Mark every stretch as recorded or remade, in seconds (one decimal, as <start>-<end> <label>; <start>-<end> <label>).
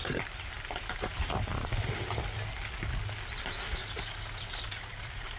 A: 0.0-0.9 recorded; 0.9-1.5 remade; 1.5-4.0 recorded; 4.0-5.4 remade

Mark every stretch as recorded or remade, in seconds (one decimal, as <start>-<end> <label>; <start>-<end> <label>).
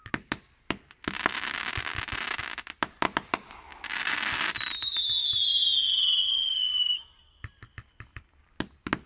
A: 0.0-9.1 recorded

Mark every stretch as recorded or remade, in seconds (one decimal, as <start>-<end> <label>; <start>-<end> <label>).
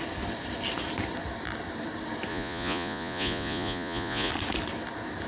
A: 0.0-2.3 recorded; 2.3-4.3 remade; 4.3-5.3 recorded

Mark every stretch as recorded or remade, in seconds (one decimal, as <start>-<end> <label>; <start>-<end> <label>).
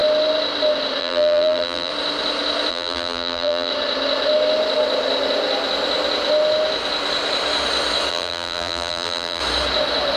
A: 0.0-1.0 recorded; 1.0-1.9 remade; 1.9-2.7 recorded; 2.7-3.7 remade; 3.7-8.1 recorded; 8.1-9.4 remade; 9.4-10.2 recorded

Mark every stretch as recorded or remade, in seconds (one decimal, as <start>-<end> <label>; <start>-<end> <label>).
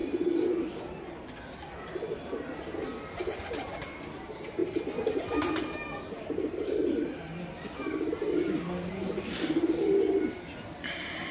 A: 0.0-11.3 recorded